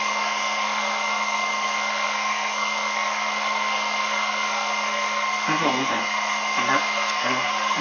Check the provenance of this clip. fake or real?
fake